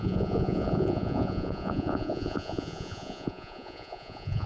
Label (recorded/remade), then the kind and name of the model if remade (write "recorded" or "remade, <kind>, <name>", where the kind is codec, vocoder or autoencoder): remade, vocoder, Vocos